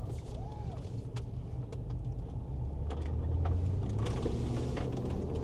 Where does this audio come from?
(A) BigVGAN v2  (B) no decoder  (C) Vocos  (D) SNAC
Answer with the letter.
B